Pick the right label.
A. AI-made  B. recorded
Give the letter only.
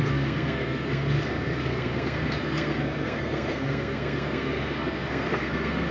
A